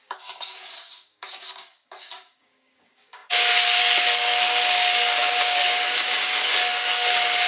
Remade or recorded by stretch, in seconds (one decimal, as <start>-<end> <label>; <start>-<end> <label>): 0.0-7.5 remade